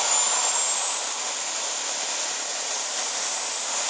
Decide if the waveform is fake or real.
real